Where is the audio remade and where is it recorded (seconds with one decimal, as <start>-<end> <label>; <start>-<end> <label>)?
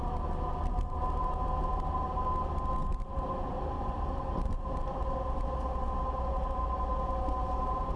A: 0.0-2.8 recorded; 2.8-4.7 remade; 4.7-8.0 recorded